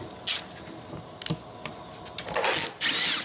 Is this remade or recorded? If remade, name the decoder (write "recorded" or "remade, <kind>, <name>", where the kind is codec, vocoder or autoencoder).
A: recorded